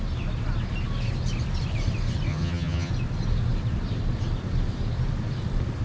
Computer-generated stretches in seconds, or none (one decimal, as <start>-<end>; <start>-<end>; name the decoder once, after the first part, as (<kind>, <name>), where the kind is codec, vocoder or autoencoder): 2.3-2.9 (vocoder, HiFi-GAN)